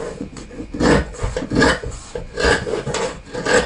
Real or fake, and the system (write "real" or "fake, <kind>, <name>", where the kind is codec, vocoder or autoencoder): fake, vocoder, Vocos